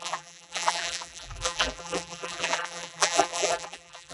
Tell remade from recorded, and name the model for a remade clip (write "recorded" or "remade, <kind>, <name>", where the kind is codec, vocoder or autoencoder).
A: remade, vocoder, BigVGAN v2